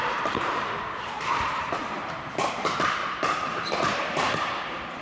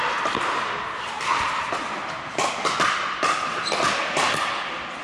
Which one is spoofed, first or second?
first